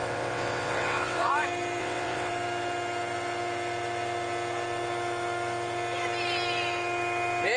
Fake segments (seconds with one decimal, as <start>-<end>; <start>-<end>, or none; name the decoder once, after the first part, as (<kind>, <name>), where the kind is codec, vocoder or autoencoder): 0.0-1.3 (vocoder, WaveNeXt); 1.8-2.3